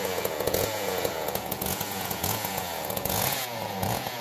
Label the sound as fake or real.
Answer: fake